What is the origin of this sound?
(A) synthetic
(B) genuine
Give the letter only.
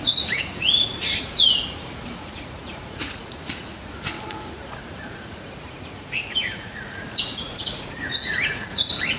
A